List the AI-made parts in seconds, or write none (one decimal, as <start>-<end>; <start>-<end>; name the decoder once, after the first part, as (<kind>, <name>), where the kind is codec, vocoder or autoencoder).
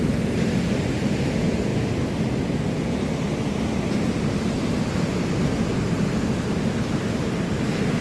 none